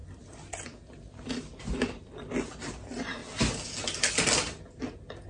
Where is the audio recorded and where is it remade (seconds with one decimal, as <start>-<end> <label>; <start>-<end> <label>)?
0.0-5.3 recorded